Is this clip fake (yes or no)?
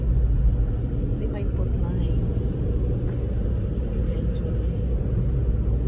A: no